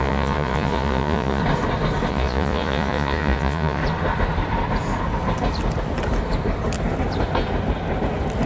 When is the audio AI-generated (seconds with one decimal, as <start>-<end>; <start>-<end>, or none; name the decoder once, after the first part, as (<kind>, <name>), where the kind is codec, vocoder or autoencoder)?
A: 0.0-1.4 (vocoder, Vocos); 2.1-3.8